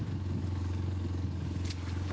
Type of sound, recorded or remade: remade